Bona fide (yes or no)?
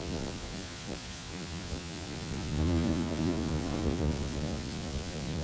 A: no